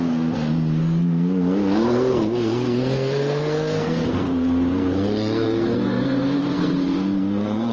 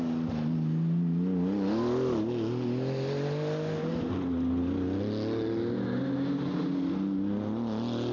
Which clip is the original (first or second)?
second